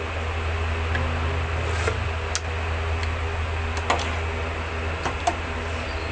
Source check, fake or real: real